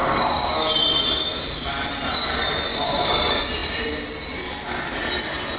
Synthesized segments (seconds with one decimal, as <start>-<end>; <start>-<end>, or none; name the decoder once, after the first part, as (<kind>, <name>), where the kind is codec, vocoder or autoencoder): 0.0-0.7 (codec, DAC); 2.7-3.2